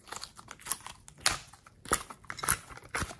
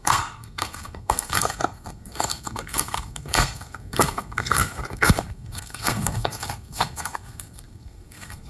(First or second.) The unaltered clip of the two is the first